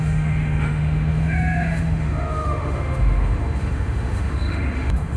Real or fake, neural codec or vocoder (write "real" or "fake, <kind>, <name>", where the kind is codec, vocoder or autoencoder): fake, autoencoder, DAC-VAE